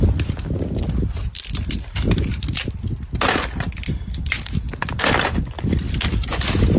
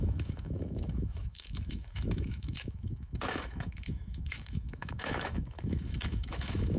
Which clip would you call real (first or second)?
first